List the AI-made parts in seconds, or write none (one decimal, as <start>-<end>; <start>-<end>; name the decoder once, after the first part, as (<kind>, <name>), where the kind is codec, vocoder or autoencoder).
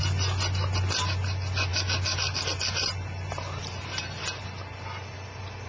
none